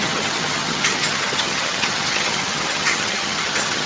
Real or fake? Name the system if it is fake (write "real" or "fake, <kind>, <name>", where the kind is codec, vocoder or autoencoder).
fake, vocoder, HiFi-GAN